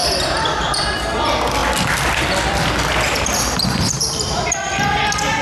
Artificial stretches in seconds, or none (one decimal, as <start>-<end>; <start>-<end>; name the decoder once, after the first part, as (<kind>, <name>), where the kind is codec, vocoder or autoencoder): 0.0-0.9 (vocoder, BigVGAN v2); 1.6-4.8

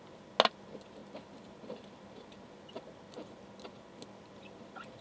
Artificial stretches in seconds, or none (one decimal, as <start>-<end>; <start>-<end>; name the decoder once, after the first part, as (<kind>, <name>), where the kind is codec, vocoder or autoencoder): none

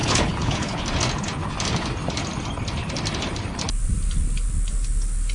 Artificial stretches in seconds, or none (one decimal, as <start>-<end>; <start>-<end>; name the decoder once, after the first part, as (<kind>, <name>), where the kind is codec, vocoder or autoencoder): 0.0-0.8 (codec, HILCodec)

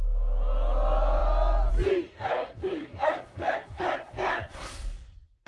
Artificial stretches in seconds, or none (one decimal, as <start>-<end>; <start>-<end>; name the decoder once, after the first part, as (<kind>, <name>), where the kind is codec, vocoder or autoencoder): 2.1-5.5 (codec, SNAC)

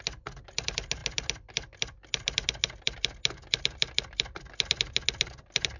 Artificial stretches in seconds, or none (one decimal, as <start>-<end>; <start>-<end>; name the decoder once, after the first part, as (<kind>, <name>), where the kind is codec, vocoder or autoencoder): none

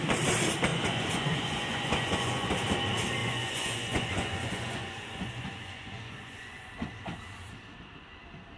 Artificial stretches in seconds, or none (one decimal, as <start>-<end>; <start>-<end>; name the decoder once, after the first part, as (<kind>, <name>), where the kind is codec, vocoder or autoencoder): 0.7-2.5 (vocoder, Vocos); 3.2-6.7

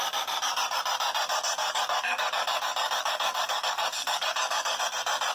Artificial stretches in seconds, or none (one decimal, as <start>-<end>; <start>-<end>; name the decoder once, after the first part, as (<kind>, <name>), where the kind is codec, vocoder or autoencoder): 1.6-4.8 (codec, DAC)